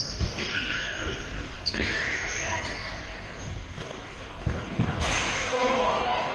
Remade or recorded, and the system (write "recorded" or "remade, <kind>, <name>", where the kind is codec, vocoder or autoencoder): remade, codec, DAC